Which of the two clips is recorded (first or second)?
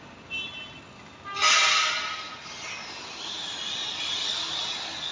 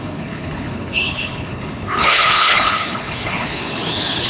first